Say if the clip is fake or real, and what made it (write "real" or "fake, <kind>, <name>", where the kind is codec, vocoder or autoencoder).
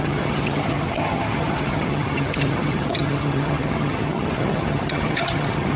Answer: fake, vocoder, HiFi-GAN